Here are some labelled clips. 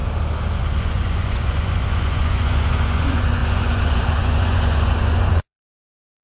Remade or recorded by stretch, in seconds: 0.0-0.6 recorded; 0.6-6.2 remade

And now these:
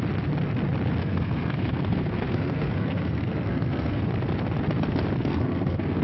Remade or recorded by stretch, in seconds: 0.0-1.0 recorded; 1.0-4.0 remade; 4.0-5.3 recorded; 5.3-6.0 remade

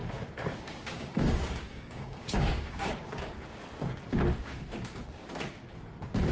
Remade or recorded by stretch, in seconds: 0.0-3.6 remade; 3.6-4.4 recorded; 4.4-5.0 remade; 5.0-6.3 recorded

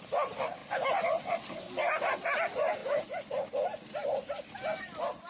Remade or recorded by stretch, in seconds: 0.0-5.3 recorded